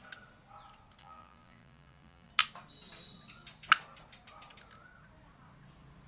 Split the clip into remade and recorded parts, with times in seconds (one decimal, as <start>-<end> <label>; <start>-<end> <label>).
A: 0.0-1.0 recorded; 1.0-2.3 remade; 2.3-6.1 recorded